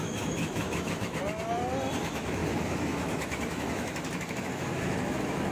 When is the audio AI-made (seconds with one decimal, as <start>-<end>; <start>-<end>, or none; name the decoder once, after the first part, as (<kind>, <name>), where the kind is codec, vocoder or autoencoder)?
0.0-1.2 (autoencoder, DAC-VAE); 2.0-5.5

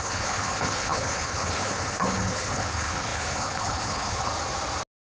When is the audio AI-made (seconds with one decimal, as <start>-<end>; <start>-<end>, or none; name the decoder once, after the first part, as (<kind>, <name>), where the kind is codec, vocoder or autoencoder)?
0.0-4.3 (codec, HILCodec)

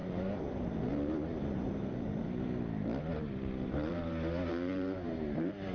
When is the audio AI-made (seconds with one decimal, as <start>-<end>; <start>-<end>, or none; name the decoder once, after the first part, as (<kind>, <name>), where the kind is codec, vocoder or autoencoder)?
0.5-0.9 (vocoder, BigVGAN v2); 3.0-5.7

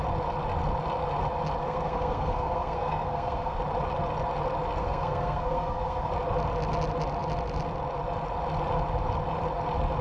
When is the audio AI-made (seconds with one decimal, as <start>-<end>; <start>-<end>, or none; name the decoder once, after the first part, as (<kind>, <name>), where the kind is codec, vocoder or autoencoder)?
1.6-3.6 (codec, SNAC); 4.8-6.1

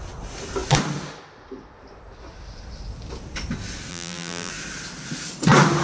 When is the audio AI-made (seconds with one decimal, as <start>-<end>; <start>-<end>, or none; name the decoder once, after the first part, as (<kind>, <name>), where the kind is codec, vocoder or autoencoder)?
3.9-4.5 (vocoder, BigVGAN v2)

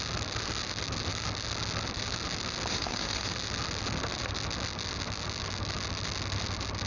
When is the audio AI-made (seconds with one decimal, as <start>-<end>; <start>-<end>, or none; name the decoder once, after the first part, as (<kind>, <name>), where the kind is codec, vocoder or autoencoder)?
2.7-3.3 (autoencoder, DAC-VAE)

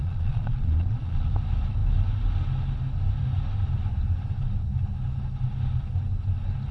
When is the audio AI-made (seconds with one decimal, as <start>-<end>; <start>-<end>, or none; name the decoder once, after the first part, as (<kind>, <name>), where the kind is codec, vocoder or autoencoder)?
0.0-1.3 (vocoder, Vocos)